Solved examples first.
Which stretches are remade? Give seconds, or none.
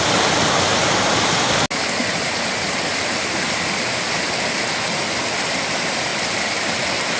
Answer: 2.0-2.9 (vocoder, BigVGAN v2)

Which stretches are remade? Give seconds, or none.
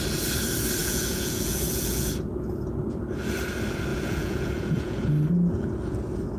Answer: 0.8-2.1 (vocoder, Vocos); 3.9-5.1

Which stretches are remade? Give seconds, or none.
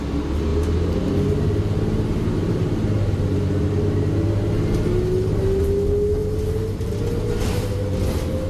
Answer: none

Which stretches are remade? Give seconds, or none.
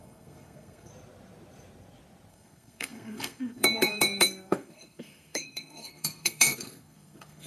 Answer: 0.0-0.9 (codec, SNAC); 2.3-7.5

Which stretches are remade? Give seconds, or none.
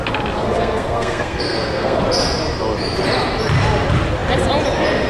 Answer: 0.4-2.0 (codec, SNAC)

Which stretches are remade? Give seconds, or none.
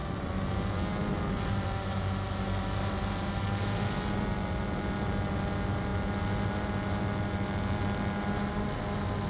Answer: none